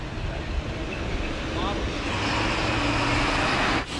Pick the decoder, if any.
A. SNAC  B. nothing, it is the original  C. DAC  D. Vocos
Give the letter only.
B